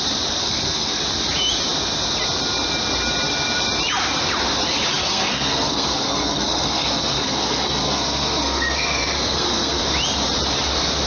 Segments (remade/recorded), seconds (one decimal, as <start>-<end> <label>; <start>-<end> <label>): 0.0-0.4 recorded; 0.4-1.0 remade; 1.0-5.0 recorded; 5.0-9.8 remade; 9.8-11.1 recorded

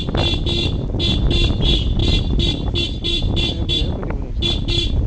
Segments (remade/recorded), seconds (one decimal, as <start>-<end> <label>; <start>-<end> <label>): 0.0-5.1 recorded

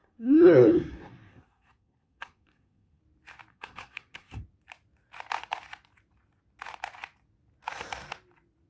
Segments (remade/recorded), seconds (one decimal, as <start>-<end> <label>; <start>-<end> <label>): 0.0-3.0 remade; 3.0-3.5 recorded; 3.5-4.4 remade; 4.4-8.7 recorded

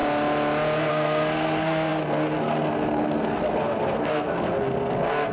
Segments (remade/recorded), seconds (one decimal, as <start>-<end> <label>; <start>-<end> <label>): 0.0-0.9 recorded; 0.9-5.3 remade

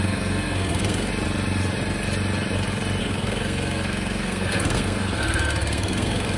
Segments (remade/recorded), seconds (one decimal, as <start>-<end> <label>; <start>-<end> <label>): 0.0-1.1 remade; 1.1-3.0 recorded; 3.0-6.4 remade

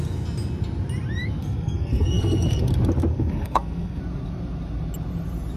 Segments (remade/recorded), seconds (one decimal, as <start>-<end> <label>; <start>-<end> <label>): 0.0-1.4 recorded; 1.4-2.7 remade; 2.7-3.1 recorded; 3.1-4.0 remade; 4.0-5.6 recorded

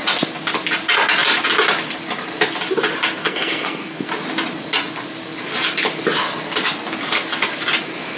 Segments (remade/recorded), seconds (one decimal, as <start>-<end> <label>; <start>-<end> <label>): 0.0-3.2 recorded; 3.2-4.1 remade; 4.1-8.2 recorded